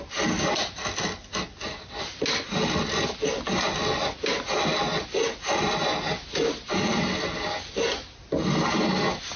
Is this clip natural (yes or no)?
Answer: yes